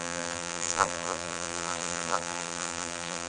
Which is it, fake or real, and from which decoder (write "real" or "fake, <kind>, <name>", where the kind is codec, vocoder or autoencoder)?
fake, vocoder, BigVGAN v2